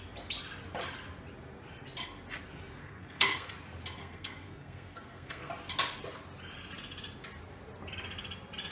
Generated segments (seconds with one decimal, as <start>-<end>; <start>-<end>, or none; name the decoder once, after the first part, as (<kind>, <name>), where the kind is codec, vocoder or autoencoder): 2.8-3.5 (codec, SNAC); 4.0-5.5